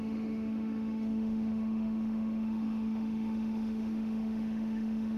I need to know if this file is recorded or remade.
remade